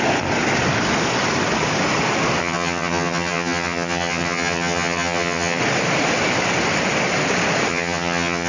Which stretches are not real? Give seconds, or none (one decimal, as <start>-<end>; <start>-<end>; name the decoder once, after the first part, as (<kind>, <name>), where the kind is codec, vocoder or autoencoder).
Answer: 2.4-5.6 (vocoder, HiFi-GAN); 7.7-8.5